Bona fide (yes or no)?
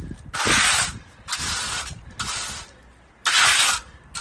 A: yes